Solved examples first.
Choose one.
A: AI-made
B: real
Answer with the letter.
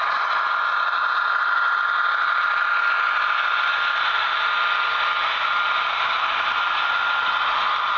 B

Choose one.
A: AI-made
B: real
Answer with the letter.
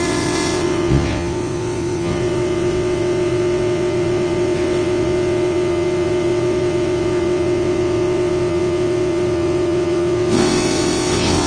A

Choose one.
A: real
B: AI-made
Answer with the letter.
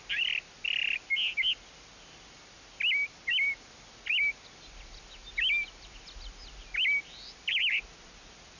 A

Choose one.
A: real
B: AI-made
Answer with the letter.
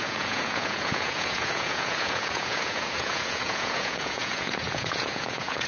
B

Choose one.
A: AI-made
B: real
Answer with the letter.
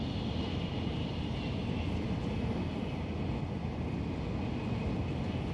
B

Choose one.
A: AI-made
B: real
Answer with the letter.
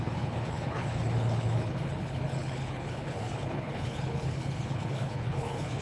A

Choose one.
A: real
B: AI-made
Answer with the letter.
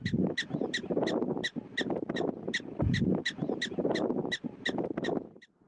A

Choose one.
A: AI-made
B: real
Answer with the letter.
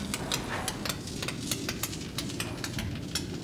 B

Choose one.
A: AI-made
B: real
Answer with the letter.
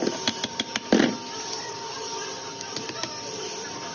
B